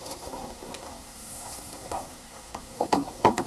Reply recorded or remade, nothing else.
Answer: remade